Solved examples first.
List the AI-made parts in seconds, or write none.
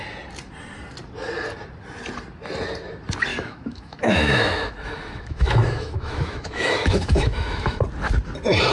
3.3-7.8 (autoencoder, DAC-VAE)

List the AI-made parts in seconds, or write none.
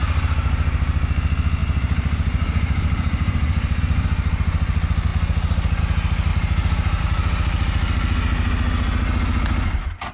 1.6-3.8 (vocoder, BigVGAN v2); 6.3-7.0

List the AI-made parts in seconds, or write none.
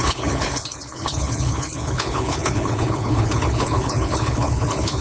0.0-5.0 (codec, HILCodec)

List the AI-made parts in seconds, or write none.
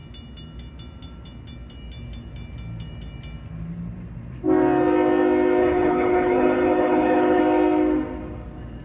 5.6-7.4 (codec, HILCodec)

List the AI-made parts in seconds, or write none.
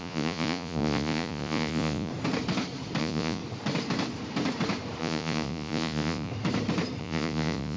0.0-2.1 (vocoder, Vocos); 3.0-3.4; 5.0-6.3; 7.0-7.8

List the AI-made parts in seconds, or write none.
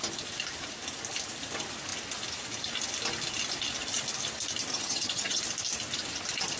4.7-5.4 (vocoder, HiFi-GAN)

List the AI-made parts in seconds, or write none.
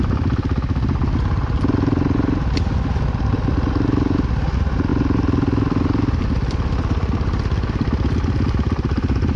none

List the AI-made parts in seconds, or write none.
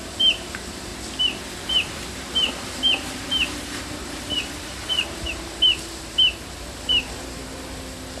0.0-0.9 (vocoder, BigVGAN v2); 2.1-8.2